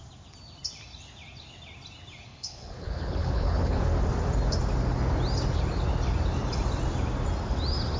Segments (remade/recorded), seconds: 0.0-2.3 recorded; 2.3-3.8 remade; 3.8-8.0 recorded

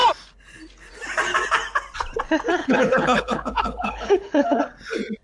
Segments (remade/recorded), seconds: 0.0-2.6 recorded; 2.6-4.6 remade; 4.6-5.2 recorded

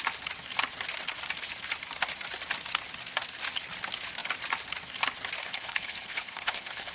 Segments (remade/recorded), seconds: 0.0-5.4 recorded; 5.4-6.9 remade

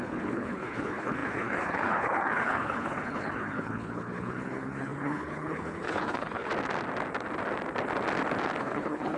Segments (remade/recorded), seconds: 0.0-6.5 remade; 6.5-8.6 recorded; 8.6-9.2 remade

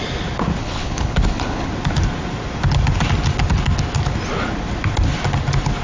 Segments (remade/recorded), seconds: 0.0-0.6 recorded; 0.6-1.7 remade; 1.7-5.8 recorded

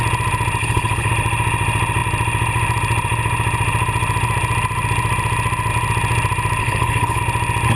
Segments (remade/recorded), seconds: 0.0-0.6 recorded; 0.6-1.1 remade; 1.1-6.6 recorded; 6.6-7.2 remade; 7.2-7.8 recorded